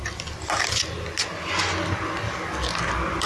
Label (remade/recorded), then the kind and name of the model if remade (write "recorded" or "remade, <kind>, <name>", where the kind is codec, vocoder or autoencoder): recorded